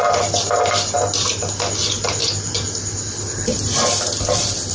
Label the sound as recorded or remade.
recorded